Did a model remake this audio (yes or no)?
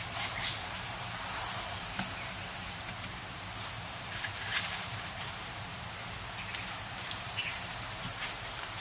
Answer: yes